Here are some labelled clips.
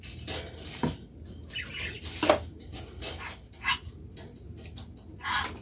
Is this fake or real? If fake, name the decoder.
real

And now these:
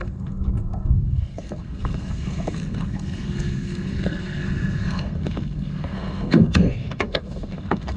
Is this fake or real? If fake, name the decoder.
fake, codec, SNAC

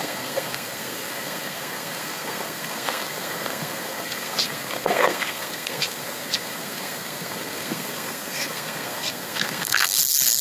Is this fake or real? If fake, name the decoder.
fake, codec, SNAC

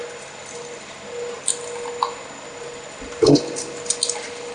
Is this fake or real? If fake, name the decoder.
real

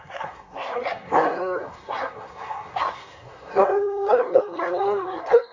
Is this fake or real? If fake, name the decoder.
fake, codec, SNAC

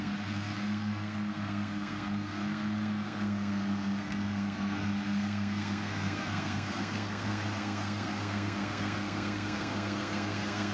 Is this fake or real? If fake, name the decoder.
fake, codec, SNAC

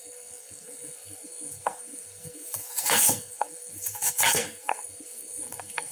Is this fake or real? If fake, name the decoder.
fake, codec, SNAC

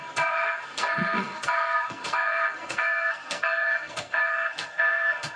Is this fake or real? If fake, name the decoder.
fake, codec, SNAC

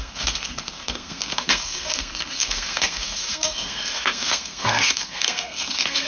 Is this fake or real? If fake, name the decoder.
fake, codec, SNAC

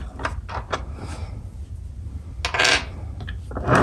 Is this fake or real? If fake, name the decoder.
real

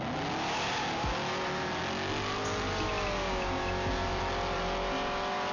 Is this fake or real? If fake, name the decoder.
real